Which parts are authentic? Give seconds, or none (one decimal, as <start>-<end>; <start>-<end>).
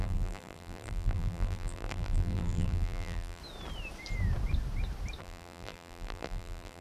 3.4-5.2